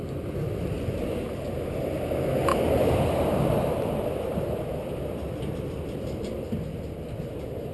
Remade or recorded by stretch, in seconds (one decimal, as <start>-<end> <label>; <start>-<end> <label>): 0.0-2.5 recorded; 2.5-5.7 remade; 5.7-7.7 recorded